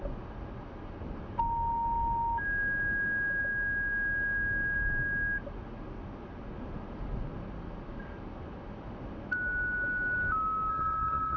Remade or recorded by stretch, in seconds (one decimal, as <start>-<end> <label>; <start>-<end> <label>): 0.0-10.7 recorded; 10.7-11.4 remade